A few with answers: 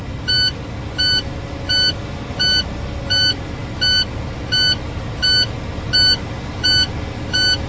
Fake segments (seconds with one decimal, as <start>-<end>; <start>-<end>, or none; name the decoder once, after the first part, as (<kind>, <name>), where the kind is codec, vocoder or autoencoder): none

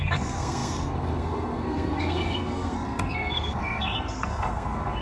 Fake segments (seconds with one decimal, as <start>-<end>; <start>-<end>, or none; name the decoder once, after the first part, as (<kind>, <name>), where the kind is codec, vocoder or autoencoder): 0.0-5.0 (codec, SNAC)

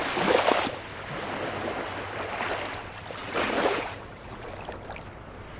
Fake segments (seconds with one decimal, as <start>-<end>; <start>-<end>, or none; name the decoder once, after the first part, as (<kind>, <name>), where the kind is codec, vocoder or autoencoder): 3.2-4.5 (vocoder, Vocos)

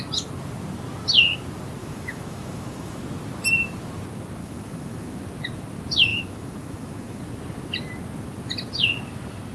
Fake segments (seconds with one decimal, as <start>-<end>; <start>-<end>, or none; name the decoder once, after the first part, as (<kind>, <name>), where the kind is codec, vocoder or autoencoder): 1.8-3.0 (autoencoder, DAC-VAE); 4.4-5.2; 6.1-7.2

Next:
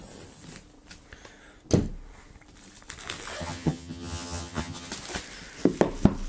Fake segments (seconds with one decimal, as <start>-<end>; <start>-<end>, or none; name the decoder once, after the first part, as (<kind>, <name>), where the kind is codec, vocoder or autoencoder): 3.4-4.9 (vocoder, HiFi-GAN)